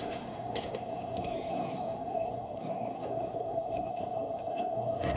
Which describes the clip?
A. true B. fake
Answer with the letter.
B